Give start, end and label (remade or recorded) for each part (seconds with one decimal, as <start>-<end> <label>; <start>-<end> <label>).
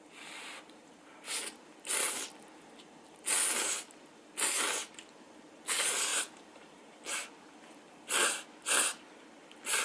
0.0-6.1 recorded; 6.1-7.0 remade; 7.0-9.8 recorded